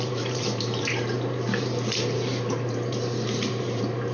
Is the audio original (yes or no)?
no